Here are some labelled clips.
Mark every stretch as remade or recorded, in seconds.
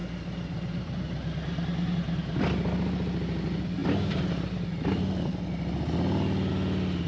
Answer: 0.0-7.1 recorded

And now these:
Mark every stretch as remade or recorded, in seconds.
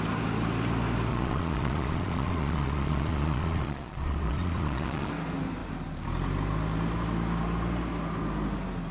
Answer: 0.0-1.1 recorded; 1.1-5.1 remade; 5.1-8.9 recorded